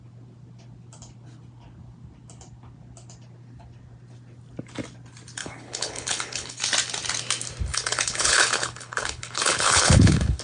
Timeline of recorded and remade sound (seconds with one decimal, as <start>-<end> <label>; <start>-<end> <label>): 0.0-5.4 recorded; 5.4-6.6 remade; 6.6-7.7 recorded; 7.7-10.4 remade